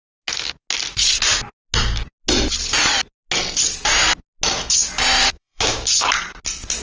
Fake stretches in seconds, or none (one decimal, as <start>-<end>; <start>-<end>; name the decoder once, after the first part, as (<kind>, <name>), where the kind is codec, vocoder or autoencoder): 5.2-6.1 (codec, DAC)